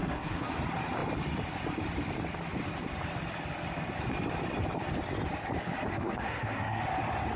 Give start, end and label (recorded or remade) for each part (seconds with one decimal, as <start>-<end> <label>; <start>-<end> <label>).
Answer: 0.0-0.5 remade; 0.5-5.9 recorded; 5.9-6.8 remade; 6.8-7.4 recorded